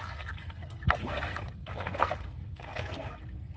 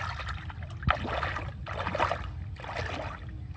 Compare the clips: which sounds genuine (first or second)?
second